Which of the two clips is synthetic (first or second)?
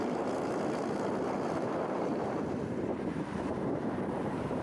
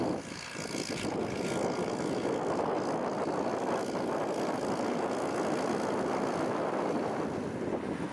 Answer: first